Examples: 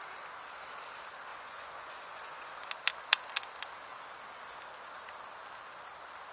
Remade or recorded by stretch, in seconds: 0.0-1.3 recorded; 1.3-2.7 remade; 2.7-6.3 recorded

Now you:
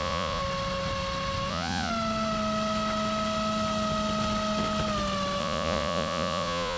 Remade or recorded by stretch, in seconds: 0.0-0.4 remade; 0.4-1.5 recorded; 1.5-1.9 remade; 1.9-5.4 recorded; 5.4-6.8 remade

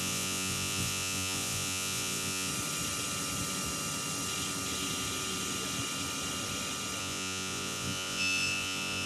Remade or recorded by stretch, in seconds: 0.0-2.5 remade; 2.5-7.0 recorded; 7.0-9.1 remade

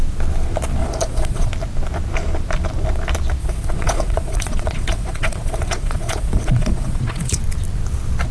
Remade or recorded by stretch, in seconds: 0.0-0.8 recorded; 0.8-1.5 remade; 1.5-3.4 recorded; 3.4-7.4 remade; 7.4-8.3 recorded

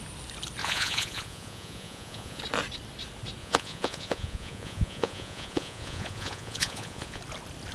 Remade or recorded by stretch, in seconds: 0.0-0.6 recorded; 0.6-2.4 remade; 2.4-3.4 recorded; 3.4-7.2 remade; 7.2-7.7 recorded